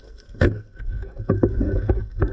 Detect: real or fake fake